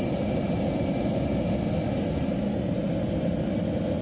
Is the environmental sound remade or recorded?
recorded